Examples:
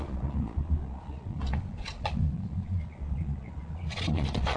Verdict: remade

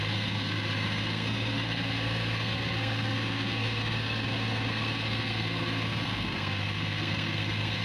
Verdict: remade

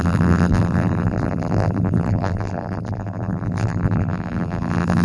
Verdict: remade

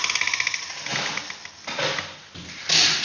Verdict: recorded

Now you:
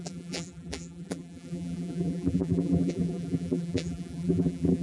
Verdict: remade